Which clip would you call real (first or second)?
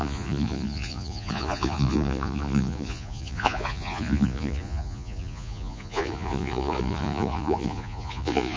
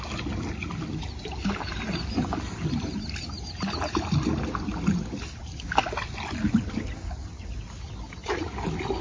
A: second